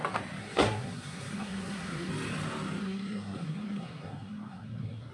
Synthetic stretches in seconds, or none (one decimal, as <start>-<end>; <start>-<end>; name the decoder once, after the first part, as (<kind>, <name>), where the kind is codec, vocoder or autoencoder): 0.4-2.1 (codec, SNAC); 2.8-5.1